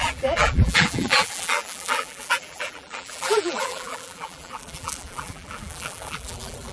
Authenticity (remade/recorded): remade